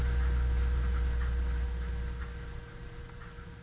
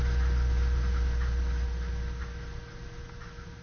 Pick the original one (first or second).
second